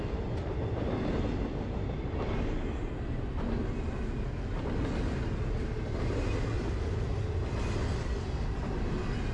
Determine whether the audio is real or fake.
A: real